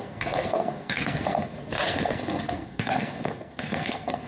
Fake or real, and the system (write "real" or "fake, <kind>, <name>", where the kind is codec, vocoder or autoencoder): fake, codec, SNAC